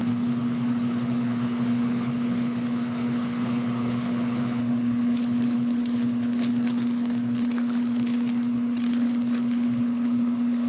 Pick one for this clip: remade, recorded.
remade